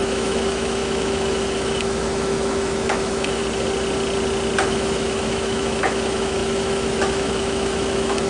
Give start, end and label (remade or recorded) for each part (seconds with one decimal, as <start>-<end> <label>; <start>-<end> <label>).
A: 0.0-3.4 remade; 3.4-4.7 recorded; 4.7-8.3 remade